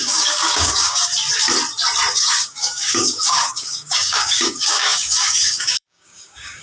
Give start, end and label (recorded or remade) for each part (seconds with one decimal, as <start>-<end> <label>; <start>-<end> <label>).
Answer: 0.0-1.1 remade; 1.1-2.1 recorded; 2.1-6.6 remade